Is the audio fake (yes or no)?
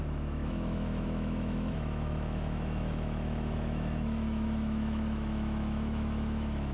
yes